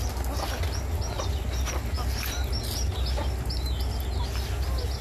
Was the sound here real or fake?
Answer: real